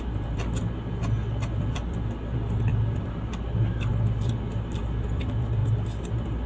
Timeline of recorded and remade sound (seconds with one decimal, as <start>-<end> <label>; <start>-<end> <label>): 0.0-6.5 recorded